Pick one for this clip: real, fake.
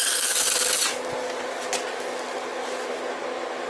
real